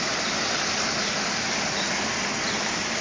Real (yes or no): yes